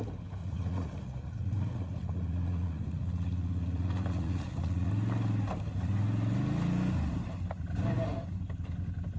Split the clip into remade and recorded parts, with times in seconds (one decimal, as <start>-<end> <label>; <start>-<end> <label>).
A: 0.0-0.4 recorded; 0.4-4.9 remade; 4.9-9.2 recorded